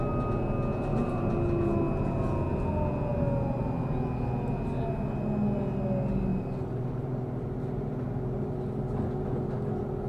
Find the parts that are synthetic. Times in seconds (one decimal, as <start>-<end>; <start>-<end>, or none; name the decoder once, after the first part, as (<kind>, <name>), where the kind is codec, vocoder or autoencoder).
0.9-1.4 (vocoder, BigVGAN v2); 6.3-7.6